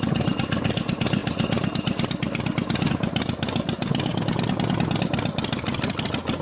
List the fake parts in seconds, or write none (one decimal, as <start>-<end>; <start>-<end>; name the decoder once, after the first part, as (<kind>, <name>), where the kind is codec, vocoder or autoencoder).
none